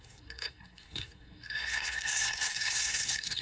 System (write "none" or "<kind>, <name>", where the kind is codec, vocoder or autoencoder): codec, SNAC